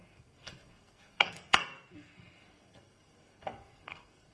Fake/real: fake